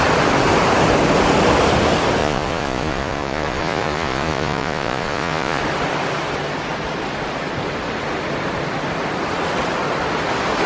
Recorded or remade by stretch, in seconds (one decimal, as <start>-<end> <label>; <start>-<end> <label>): 0.0-2.2 recorded; 2.2-5.6 remade; 5.6-10.7 recorded